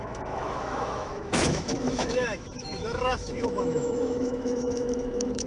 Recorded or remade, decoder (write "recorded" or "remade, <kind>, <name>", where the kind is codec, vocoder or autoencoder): remade, autoencoder, DAC-VAE